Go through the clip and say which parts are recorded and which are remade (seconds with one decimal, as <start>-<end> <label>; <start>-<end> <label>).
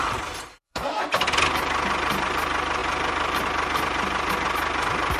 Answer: 0.0-0.5 recorded; 0.5-1.0 remade; 1.0-5.2 recorded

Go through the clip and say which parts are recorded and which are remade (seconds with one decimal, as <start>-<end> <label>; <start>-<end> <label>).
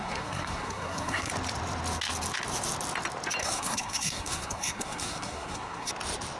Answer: 0.0-1.3 remade; 1.3-3.4 recorded; 3.4-5.9 remade; 5.9-6.4 recorded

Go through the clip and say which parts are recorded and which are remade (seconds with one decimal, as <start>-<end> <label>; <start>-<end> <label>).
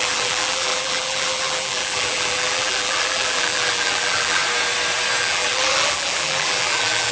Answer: 0.0-4.4 remade; 4.4-5.2 recorded; 5.2-7.1 remade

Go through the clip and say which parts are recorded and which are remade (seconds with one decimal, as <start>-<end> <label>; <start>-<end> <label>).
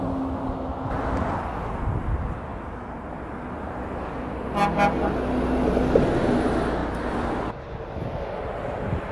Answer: 0.0-9.1 recorded